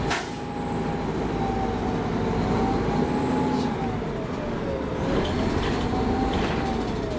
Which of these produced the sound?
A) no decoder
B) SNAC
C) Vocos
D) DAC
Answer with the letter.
A